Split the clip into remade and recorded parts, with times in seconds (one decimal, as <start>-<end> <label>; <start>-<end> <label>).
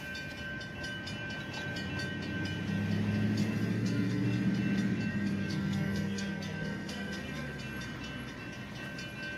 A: 0.0-3.4 recorded; 3.4-4.5 remade; 4.5-5.1 recorded; 5.1-7.6 remade; 7.6-9.4 recorded